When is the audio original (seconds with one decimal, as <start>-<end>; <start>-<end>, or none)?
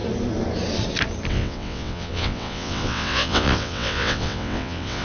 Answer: 0.0-1.3